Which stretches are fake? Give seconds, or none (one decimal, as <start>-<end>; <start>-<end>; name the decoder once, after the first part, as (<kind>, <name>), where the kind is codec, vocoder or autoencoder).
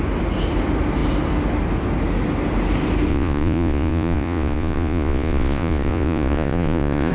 3.1-7.1 (vocoder, Vocos)